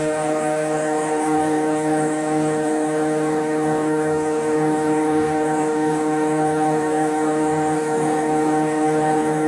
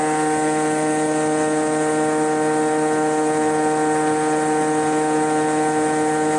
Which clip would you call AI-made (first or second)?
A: first